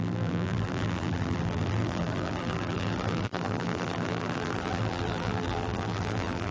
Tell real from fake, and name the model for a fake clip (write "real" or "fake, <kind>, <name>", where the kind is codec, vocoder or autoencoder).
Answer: fake, vocoder, BigVGAN v2